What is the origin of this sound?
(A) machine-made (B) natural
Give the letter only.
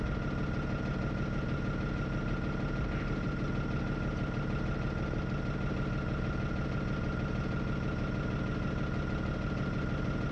B